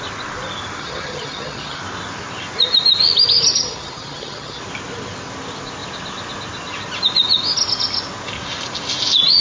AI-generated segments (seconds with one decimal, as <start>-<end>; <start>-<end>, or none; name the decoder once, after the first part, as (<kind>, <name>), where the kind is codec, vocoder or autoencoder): 0.8-1.8 (vocoder, HiFi-GAN); 3.5-4.6